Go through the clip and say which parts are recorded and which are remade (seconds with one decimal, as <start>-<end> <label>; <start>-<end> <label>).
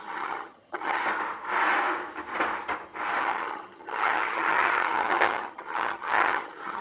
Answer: 0.0-1.0 remade; 1.0-3.2 recorded; 3.2-6.8 remade